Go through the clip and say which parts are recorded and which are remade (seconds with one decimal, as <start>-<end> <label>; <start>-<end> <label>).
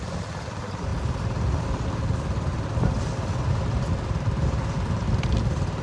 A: 0.0-2.5 recorded; 2.5-3.0 remade; 3.0-5.8 recorded